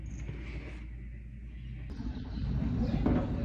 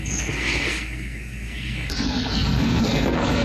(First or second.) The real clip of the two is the first